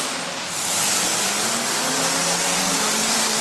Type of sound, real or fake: real